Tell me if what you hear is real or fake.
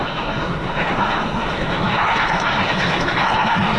fake